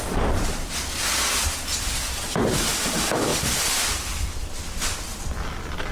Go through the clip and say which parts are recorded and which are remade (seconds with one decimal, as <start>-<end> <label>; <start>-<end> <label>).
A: 0.0-5.9 recorded